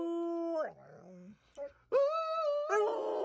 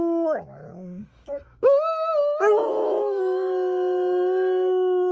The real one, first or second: first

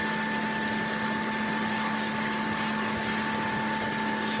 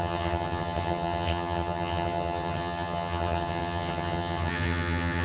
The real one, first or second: first